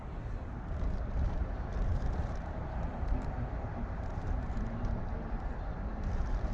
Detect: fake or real fake